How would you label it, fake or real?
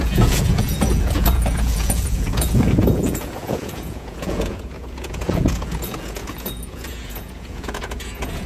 fake